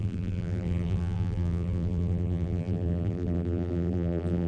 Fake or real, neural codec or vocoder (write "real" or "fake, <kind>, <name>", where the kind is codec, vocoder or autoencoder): fake, vocoder, BigVGAN v2